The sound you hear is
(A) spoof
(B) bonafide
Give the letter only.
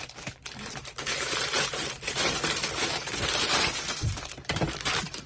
A